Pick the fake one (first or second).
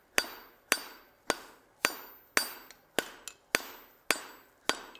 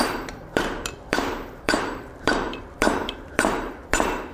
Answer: second